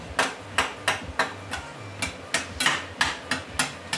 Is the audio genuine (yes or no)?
yes